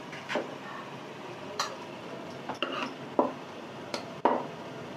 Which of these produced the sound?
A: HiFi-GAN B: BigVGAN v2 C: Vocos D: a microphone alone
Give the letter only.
B